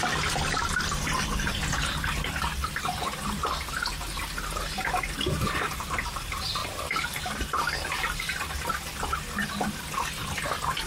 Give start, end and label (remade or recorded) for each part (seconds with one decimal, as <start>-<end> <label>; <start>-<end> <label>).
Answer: 0.0-6.6 recorded; 6.6-8.7 remade; 8.7-10.2 recorded; 10.2-10.9 remade